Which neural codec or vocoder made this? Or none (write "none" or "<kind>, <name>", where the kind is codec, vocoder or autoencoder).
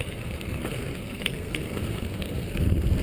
codec, SNAC